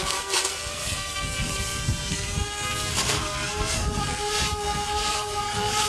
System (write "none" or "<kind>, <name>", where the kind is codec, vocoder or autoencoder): codec, SNAC